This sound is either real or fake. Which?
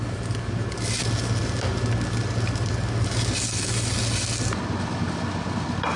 real